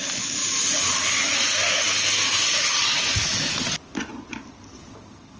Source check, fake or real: real